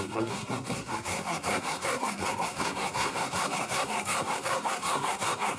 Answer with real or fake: fake